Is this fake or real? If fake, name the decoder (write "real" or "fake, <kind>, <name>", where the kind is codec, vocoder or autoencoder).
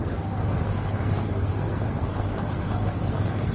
fake, codec, SNAC